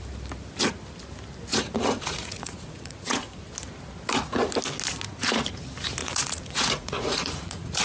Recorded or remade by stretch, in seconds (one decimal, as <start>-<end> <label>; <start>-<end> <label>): 0.0-1.5 recorded; 1.5-3.4 remade; 3.4-6.0 recorded; 6.0-7.8 remade